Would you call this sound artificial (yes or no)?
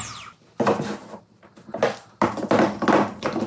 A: no